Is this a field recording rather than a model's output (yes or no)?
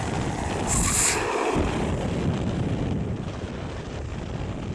yes